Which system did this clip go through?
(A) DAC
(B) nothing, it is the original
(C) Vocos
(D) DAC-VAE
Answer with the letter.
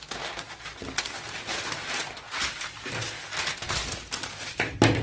B